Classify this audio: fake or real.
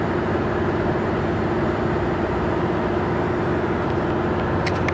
real